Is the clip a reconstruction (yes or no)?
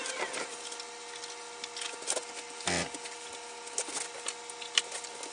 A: no